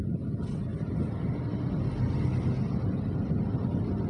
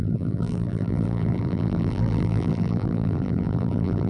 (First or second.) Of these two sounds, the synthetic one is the second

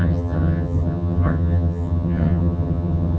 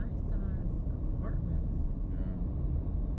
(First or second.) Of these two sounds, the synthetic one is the first